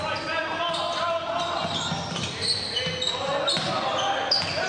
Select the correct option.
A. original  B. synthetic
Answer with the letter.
A